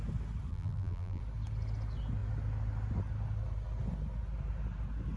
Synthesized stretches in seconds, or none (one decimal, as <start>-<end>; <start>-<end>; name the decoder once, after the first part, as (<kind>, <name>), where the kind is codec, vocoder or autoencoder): 0.5-1.2 (vocoder, BigVGAN v2)